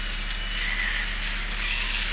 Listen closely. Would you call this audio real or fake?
real